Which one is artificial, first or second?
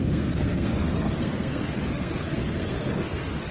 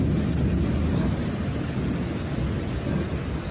first